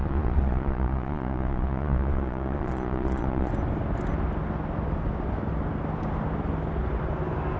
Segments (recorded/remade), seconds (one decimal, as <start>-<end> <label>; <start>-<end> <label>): 0.0-3.5 remade; 3.5-7.6 recorded